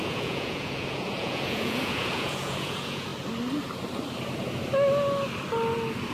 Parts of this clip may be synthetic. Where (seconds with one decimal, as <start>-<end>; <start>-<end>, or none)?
0.0-3.1

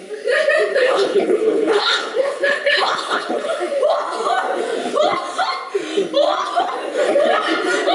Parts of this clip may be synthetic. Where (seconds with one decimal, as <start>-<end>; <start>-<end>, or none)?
0.7-3.6